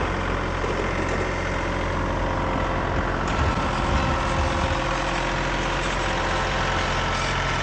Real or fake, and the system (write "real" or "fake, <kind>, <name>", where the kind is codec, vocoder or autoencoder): real